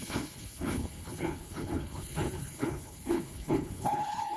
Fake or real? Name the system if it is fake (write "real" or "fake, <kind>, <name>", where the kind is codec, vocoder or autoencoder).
fake, codec, HILCodec